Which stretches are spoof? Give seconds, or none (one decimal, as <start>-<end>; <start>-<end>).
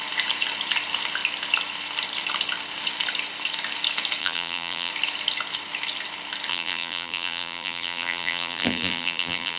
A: 4.2-4.9; 6.5-9.6